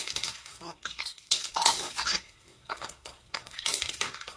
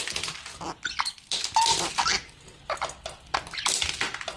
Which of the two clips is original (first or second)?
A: second